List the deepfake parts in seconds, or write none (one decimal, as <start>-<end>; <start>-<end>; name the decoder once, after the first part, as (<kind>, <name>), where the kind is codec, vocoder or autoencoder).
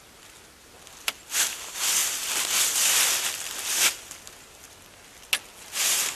none